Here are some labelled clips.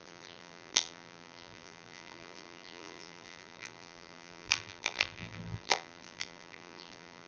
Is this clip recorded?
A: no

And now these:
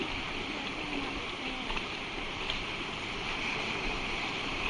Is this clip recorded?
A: no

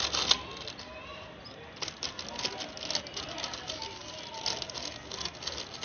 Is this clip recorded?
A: yes